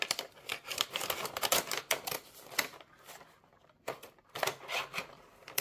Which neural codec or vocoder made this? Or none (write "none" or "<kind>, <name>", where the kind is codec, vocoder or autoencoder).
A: none